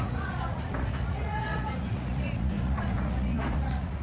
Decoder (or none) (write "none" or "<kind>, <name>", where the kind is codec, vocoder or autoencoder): vocoder, Vocos